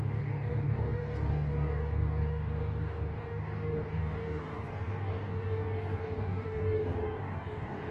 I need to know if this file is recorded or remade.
remade